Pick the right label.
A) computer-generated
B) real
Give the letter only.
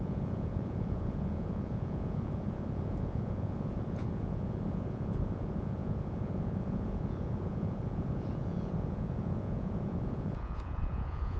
A